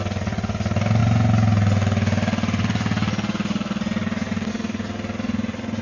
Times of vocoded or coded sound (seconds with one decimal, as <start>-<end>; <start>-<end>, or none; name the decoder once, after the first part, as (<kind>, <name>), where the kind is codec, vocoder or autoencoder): none